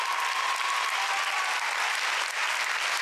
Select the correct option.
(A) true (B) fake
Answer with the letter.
A